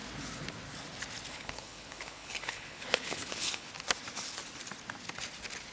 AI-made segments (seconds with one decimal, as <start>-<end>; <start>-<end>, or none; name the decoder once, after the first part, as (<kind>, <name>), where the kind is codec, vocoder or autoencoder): 1.3-3.7 (codec, HILCodec)